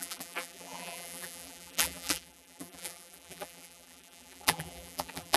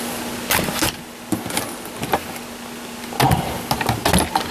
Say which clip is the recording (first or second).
second